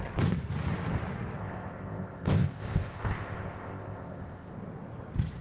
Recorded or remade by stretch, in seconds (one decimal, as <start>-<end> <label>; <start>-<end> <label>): 0.0-1.4 recorded; 1.4-4.5 remade; 4.5-5.4 recorded